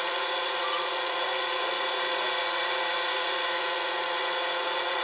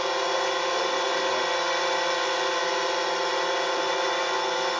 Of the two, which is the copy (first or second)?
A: first